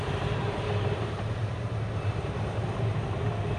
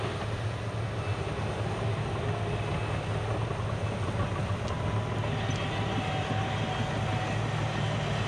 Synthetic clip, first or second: first